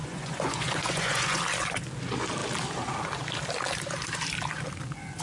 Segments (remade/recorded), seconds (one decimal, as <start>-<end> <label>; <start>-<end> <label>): 0.0-1.4 remade; 1.4-5.2 recorded